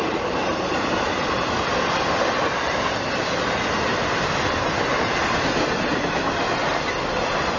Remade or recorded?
recorded